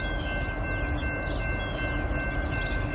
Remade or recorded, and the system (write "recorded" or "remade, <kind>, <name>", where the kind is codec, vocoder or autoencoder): recorded